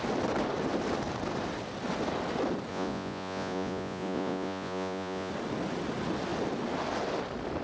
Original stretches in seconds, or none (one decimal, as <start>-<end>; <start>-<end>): 0.0-2.7; 5.3-7.6